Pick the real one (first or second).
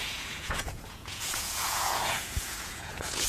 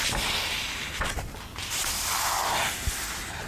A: second